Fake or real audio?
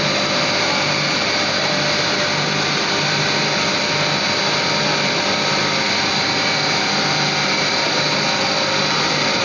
real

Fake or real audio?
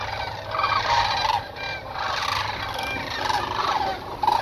real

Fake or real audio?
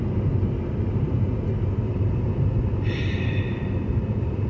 real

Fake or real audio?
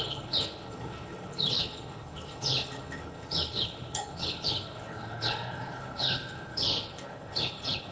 fake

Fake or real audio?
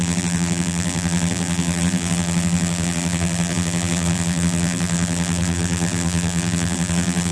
fake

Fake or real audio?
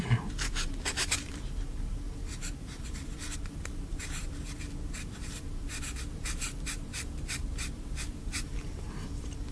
fake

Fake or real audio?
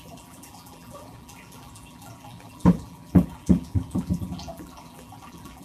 fake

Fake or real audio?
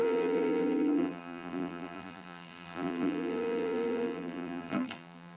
fake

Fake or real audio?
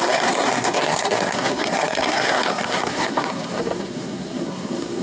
fake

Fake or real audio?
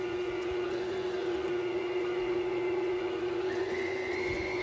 fake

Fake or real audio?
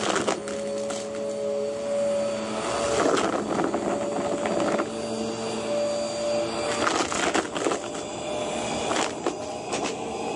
real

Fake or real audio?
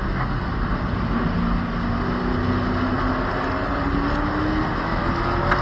real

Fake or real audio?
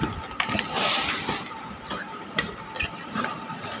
real